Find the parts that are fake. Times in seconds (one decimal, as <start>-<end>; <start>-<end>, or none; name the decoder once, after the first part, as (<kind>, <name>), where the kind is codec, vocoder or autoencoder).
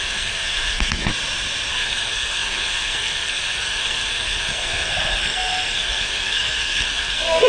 0.0-1.1 (codec, SNAC); 1.7-7.5